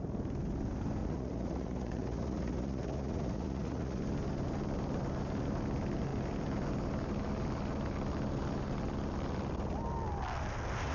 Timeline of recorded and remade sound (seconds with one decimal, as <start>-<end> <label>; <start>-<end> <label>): 0.0-1.0 recorded; 1.0-4.0 remade; 4.0-10.9 recorded

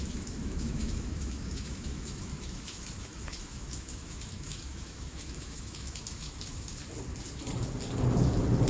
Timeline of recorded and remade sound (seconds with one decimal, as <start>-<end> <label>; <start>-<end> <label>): 0.0-6.8 remade; 6.8-8.7 recorded

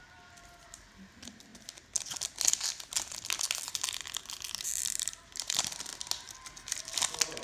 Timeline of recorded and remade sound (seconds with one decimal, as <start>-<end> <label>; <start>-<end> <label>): 0.0-1.5 remade; 1.5-4.2 recorded; 4.2-5.9 remade; 5.9-6.8 recorded; 6.8-7.4 remade

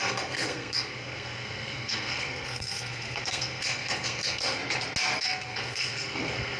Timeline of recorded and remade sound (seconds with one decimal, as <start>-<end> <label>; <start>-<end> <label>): 0.0-4.6 remade; 4.6-5.2 recorded; 5.2-6.6 remade